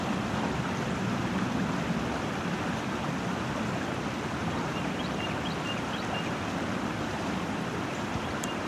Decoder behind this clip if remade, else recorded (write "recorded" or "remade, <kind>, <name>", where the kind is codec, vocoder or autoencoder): recorded